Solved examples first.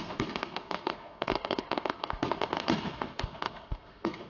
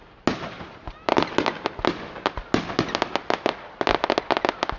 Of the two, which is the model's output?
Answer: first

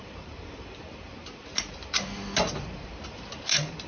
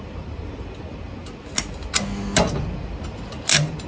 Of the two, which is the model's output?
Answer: first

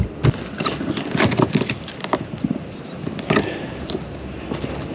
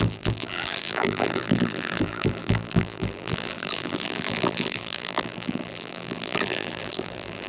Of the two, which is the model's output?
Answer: second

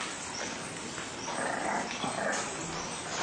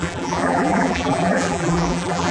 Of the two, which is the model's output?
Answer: second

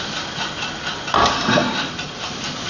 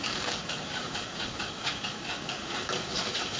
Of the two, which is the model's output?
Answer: second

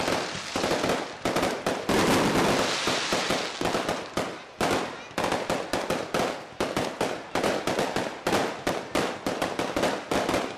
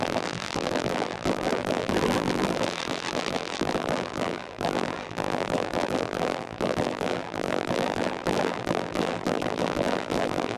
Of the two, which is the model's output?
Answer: second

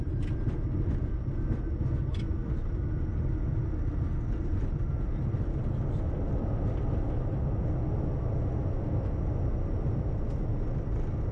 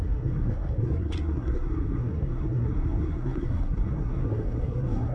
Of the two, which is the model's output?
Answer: second